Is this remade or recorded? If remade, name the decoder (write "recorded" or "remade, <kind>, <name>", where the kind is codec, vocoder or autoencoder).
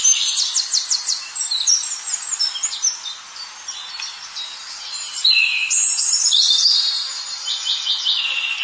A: remade, vocoder, BigVGAN v2